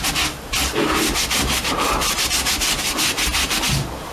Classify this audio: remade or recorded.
recorded